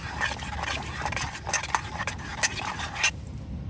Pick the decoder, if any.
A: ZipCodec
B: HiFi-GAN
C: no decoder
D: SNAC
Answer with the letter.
C